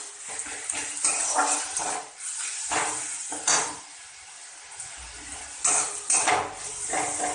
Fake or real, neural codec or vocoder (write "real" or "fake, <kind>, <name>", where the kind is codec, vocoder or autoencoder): real